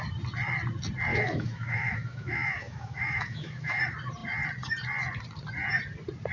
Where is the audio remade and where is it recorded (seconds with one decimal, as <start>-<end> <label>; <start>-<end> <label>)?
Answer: 0.0-1.1 recorded; 1.1-3.8 remade; 3.8-6.3 recorded